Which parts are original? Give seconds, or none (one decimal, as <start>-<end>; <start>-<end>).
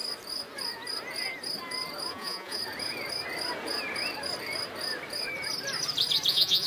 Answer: 0.0-2.1; 2.6-6.3